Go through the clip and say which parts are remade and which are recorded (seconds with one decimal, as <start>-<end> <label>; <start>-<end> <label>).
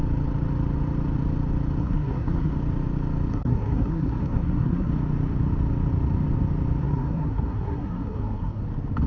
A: 0.0-1.8 recorded; 1.8-2.5 remade; 2.5-3.3 recorded; 3.3-4.9 remade; 4.9-6.8 recorded; 6.8-8.6 remade; 8.6-9.1 recorded